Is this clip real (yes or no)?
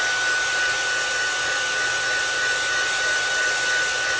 yes